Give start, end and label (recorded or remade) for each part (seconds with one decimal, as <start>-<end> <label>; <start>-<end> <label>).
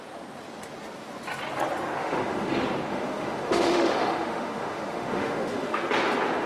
0.0-2.0 recorded; 2.0-2.5 remade; 2.5-2.9 recorded; 2.9-5.8 remade; 5.8-6.5 recorded